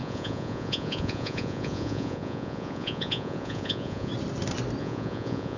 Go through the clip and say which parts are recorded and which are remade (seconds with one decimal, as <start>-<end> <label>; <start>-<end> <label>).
0.0-4.1 remade; 4.1-4.8 recorded; 4.8-5.6 remade